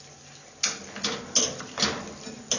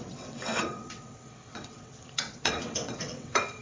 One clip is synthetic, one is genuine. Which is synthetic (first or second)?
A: second